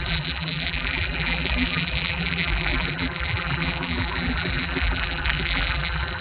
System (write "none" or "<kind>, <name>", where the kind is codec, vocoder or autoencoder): vocoder, BigVGAN v2